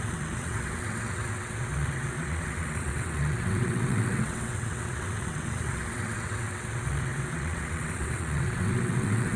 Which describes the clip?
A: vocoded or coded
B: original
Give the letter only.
A